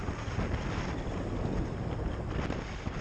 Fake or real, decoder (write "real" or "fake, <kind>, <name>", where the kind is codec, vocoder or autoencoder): real